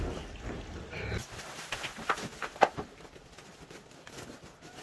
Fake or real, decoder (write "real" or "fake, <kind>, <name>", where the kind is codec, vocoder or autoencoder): fake, vocoder, BigVGAN v2